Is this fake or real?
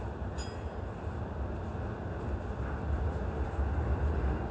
real